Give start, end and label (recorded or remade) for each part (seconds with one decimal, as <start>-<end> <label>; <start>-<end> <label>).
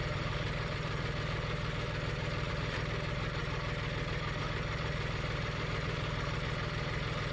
0.0-3.4 remade; 3.4-4.4 recorded; 4.4-7.3 remade